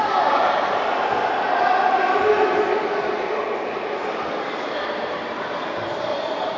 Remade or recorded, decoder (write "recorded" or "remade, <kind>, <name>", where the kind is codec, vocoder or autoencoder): remade, vocoder, BigVGAN v2